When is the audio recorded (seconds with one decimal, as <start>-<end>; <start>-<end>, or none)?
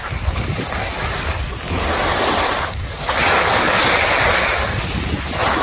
0.0-5.6